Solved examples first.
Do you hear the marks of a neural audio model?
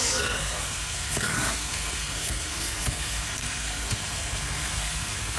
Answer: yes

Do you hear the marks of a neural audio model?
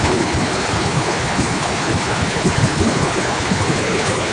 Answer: yes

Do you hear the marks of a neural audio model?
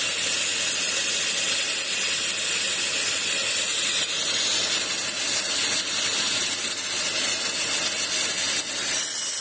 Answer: no